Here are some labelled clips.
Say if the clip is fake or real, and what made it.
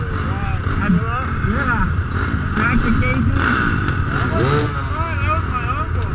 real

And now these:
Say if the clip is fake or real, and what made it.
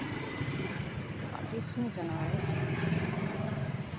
fake, vocoder, BigVGAN v2